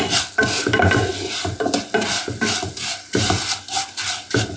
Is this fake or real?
real